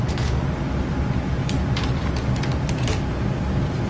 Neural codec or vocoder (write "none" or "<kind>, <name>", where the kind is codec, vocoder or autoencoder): none